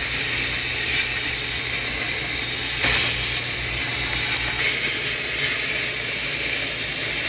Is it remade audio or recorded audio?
recorded